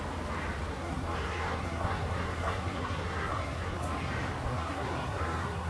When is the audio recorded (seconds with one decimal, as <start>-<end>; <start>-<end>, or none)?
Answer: 0.0-0.7; 4.1-4.5

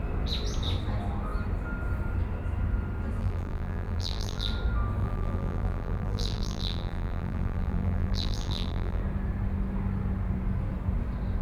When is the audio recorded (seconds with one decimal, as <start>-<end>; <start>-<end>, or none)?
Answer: 0.0-3.2; 4.5-5.0; 9.0-11.4